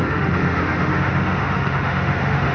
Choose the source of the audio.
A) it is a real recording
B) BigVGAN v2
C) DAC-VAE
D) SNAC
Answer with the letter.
C